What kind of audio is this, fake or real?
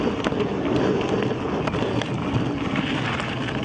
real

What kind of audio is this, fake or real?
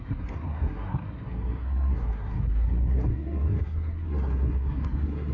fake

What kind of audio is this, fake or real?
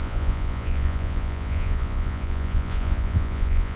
fake